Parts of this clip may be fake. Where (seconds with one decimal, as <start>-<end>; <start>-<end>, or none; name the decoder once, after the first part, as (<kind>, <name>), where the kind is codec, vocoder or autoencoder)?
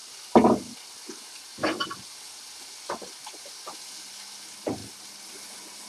none